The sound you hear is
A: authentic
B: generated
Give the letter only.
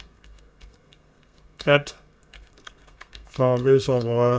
B